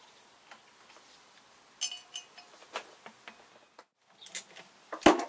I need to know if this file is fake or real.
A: real